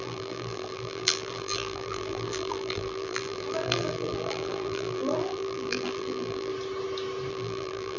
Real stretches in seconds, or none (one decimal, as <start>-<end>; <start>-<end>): 6.5-7.3